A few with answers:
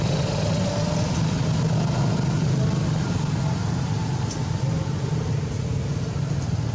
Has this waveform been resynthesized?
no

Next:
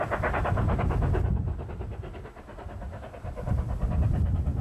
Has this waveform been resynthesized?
no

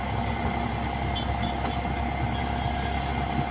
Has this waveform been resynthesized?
no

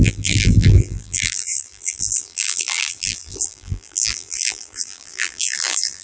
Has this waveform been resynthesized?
yes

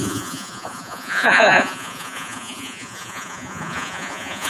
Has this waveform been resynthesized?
yes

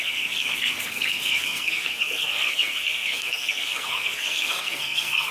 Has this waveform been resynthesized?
yes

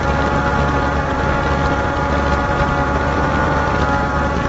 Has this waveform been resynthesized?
no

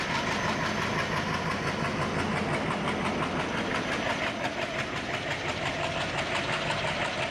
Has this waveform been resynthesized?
no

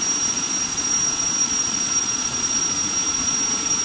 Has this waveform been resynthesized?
yes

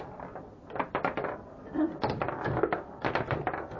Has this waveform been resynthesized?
no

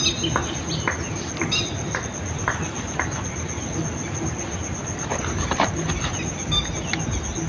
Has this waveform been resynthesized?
no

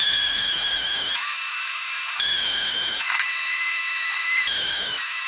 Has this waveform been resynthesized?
yes